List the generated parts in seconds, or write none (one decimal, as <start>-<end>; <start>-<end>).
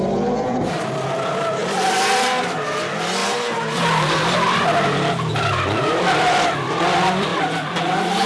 0.0-1.6; 2.8-3.2; 5.3-7.3; 7.8-8.3